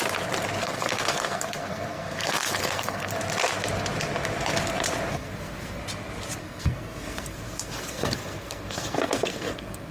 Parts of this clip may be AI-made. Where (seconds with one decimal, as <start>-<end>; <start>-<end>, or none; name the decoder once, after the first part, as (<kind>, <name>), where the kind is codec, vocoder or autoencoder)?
0.6-3.1 (codec, SNAC); 5.1-5.8; 6.4-9.9